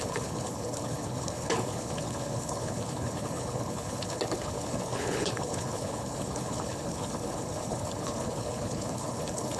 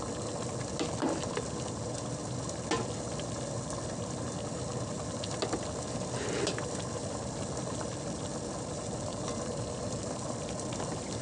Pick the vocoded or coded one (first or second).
first